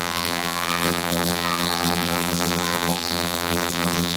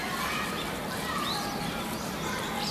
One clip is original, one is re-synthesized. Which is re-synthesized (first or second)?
first